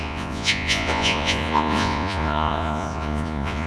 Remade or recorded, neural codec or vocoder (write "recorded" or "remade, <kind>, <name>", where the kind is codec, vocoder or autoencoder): remade, vocoder, Vocos